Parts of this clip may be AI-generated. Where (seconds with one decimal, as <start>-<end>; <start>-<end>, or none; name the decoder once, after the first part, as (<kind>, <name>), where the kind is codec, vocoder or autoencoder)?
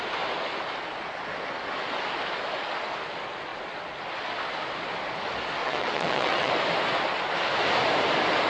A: 5.6-6.5 (vocoder, WaveNeXt)